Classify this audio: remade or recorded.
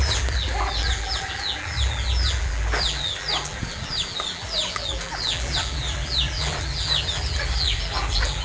remade